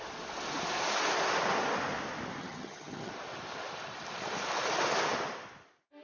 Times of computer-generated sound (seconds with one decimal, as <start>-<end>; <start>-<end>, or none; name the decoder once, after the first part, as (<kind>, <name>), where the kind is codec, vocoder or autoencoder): 2.4-3.1 (vocoder, HiFi-GAN)